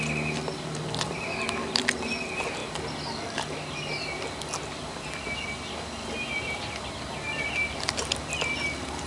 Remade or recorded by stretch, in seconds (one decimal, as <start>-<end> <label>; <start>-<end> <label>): 0.0-9.1 recorded